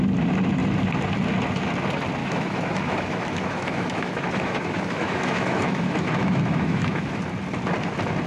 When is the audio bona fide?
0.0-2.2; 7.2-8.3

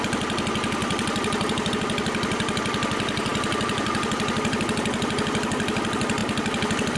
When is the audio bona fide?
0.0-0.8; 1.7-3.3; 4.6-7.0

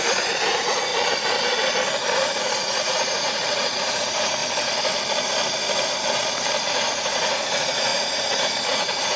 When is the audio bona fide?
0.9-2.4; 4.4-6.7

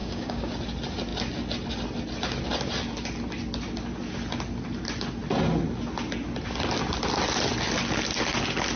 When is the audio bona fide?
0.5-8.8

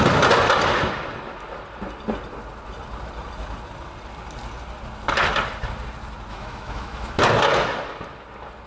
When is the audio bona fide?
0.0-6.3; 7.2-8.7

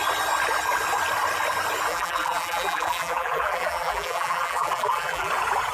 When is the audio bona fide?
0.0-1.9; 5.3-5.7